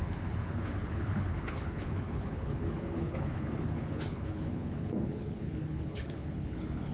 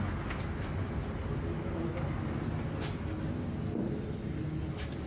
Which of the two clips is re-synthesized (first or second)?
first